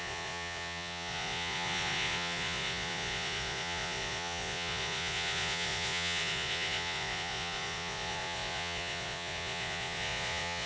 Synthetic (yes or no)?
yes